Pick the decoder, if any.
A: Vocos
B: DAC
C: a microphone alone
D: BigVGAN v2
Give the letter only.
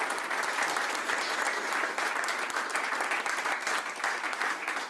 C